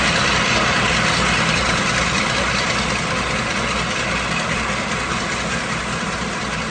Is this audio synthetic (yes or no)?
no